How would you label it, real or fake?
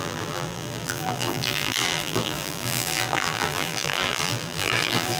fake